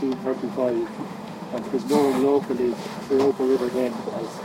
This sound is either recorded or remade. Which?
remade